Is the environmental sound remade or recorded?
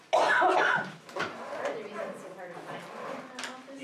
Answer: recorded